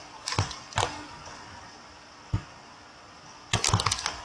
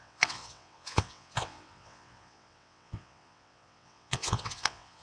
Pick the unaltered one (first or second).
first